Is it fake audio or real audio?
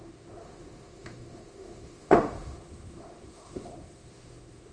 fake